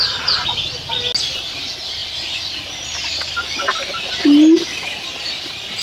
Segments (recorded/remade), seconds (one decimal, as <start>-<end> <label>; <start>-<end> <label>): 0.0-2.0 recorded; 2.0-3.6 remade; 3.6-5.8 recorded